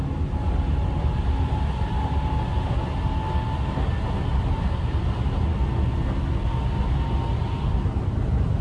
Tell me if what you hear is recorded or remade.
recorded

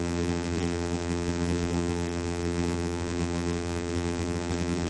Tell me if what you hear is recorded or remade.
remade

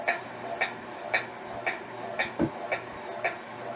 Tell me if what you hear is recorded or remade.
recorded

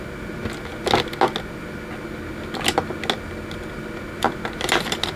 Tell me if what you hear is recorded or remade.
recorded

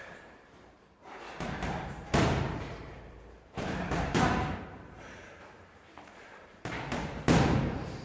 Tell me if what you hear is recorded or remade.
remade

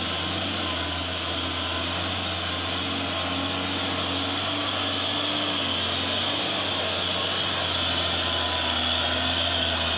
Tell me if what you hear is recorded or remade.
recorded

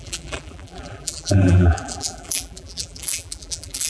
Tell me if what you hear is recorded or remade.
remade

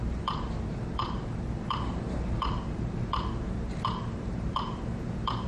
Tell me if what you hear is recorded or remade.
remade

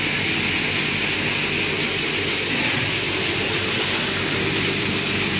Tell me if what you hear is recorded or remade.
recorded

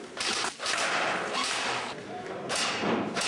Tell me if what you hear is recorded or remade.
recorded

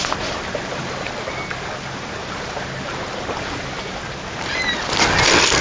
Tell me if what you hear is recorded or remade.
recorded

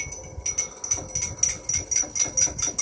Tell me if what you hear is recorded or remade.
recorded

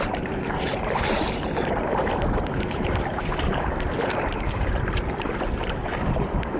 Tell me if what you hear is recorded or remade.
remade